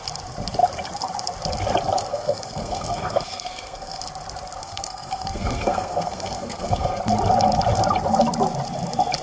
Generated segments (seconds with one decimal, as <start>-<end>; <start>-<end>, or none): 2.1-4.0; 4.6-7.0